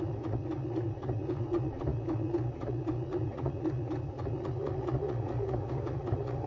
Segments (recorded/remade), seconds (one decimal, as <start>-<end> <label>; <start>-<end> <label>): 0.0-6.5 remade